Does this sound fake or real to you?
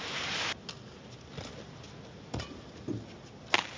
real